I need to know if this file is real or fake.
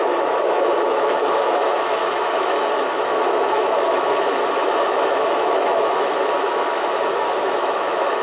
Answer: fake